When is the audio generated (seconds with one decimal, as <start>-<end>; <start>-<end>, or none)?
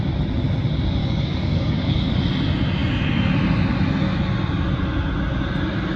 1.0-2.2